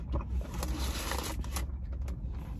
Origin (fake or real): real